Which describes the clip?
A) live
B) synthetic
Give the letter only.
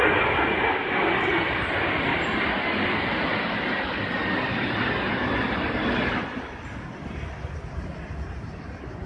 A